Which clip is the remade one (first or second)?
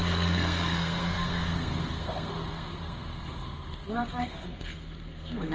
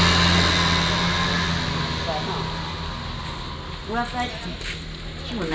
first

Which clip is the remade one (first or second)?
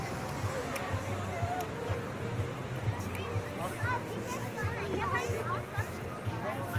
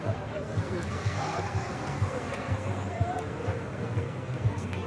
second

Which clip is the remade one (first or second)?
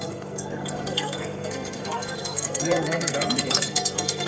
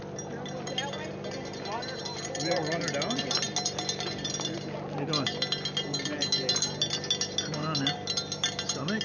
first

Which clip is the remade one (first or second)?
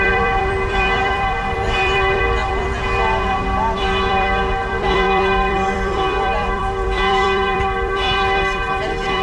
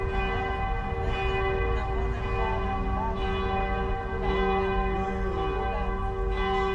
first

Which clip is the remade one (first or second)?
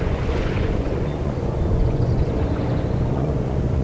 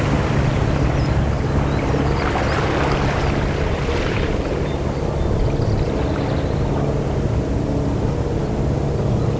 first